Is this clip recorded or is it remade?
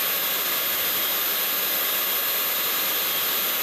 recorded